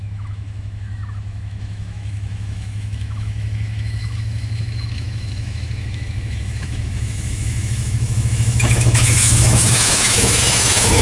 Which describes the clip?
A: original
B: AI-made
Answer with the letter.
B